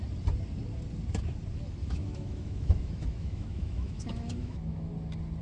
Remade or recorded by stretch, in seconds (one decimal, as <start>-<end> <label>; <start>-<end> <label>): 0.0-1.8 recorded; 1.8-4.9 remade; 4.9-5.4 recorded